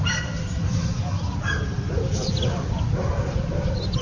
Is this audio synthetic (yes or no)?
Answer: no